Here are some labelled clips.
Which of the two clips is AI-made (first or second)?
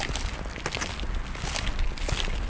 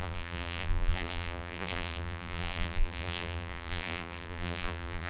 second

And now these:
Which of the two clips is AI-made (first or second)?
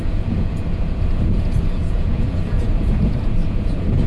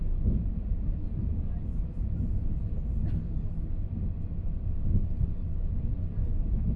first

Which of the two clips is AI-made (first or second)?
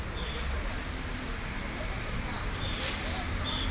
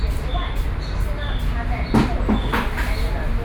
first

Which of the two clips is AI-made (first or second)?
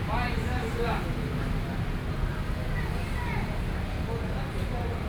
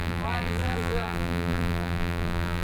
second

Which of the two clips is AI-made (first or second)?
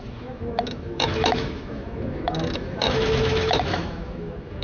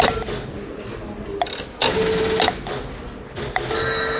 first